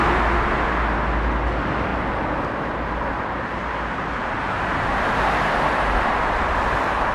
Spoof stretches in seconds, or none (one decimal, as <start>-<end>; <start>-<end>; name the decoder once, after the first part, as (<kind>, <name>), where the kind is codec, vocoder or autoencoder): 1.9-6.2 (vocoder, BigVGAN v2)